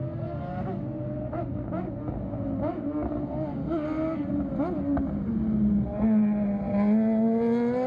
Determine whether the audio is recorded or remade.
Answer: recorded